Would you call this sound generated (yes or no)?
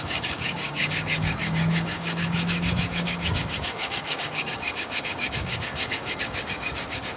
yes